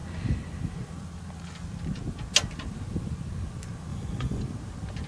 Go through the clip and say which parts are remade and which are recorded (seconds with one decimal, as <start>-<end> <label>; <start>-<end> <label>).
0.0-3.9 recorded; 3.9-4.4 remade; 4.4-5.1 recorded